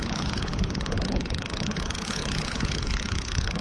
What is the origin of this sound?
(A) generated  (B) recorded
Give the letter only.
A